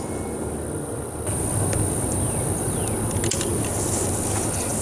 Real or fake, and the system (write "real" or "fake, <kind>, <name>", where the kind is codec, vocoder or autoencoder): real